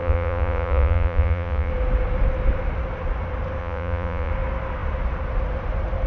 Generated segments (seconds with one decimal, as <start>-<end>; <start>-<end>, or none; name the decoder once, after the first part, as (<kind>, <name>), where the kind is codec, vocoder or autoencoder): 0.0-1.7 (vocoder, Vocos); 3.6-4.3